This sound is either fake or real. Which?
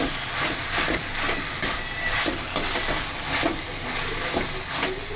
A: real